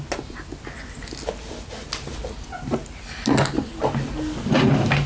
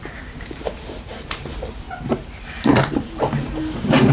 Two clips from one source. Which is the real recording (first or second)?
first